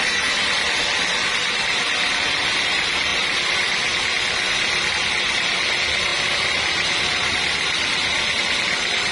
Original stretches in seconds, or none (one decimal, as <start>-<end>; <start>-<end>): 0.0-9.1

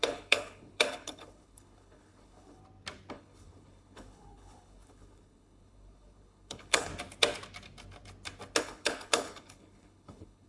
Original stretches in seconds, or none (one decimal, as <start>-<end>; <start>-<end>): 2.6-3.1; 6.9-8.6

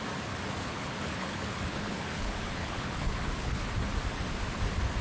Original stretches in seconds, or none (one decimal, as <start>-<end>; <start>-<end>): 0.0-0.6; 3.6-5.0

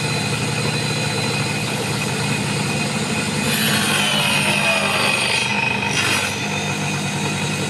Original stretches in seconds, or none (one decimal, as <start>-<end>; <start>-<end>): 0.0-1.6; 2.1-7.7